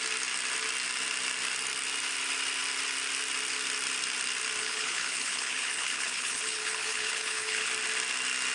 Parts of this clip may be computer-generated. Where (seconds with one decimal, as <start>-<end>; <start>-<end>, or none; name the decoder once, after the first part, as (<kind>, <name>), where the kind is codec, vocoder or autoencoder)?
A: 4.6-7.7 (codec, HILCodec)